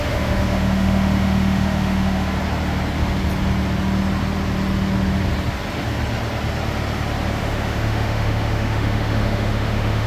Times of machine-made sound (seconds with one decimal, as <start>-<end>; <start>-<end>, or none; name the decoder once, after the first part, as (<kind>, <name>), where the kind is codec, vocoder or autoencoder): 0.0-2.4 (autoencoder, DAC-VAE); 7.4-10.1